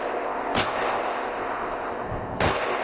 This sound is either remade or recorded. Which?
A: remade